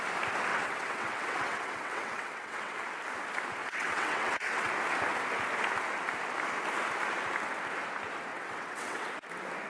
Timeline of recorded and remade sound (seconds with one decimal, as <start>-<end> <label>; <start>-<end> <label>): 0.0-0.5 recorded; 0.5-2.7 remade; 2.7-3.6 recorded; 3.6-4.7 remade; 4.7-8.3 recorded; 8.3-9.1 remade; 9.1-9.7 recorded